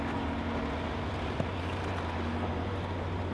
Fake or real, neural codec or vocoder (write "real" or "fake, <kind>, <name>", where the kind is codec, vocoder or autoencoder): real